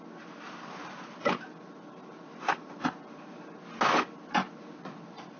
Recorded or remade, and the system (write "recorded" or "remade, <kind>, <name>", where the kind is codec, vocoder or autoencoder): recorded